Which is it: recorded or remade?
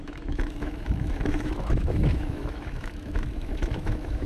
remade